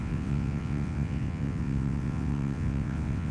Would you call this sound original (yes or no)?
no